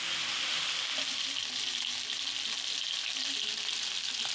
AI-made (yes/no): no